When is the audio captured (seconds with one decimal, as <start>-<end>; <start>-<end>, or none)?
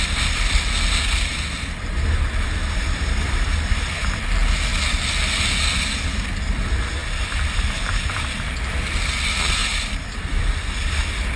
0.0-2.6; 3.7-7.0; 8.1-9.6